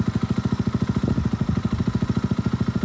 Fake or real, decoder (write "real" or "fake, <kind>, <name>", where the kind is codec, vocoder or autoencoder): real